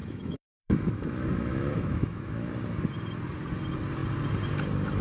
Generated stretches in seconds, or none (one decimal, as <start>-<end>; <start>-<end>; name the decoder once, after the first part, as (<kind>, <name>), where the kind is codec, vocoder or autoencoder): 0.0-2.5 (autoencoder, DAC-VAE)